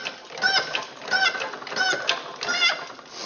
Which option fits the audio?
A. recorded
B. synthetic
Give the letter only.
A